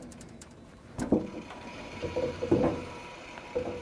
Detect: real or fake fake